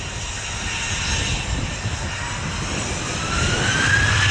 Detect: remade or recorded recorded